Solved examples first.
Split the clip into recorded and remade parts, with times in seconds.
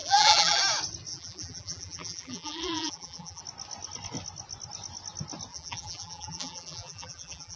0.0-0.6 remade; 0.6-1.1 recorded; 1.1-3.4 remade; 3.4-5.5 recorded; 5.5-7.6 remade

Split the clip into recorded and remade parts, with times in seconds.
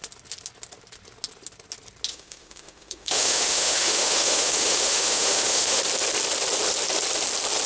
0.0-2.1 recorded; 2.1-5.8 remade; 5.8-7.7 recorded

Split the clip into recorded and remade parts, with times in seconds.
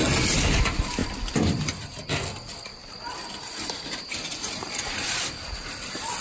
0.0-6.2 recorded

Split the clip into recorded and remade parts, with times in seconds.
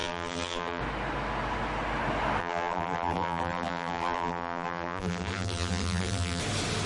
0.0-0.8 remade; 0.8-2.4 recorded; 2.4-6.4 remade; 6.4-6.9 recorded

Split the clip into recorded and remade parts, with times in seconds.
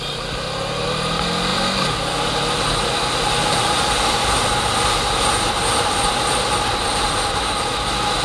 0.0-8.2 recorded